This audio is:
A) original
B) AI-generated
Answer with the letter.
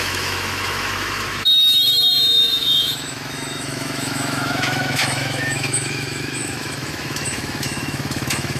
B